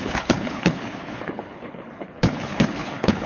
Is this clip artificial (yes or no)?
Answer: yes